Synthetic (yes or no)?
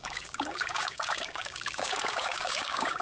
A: yes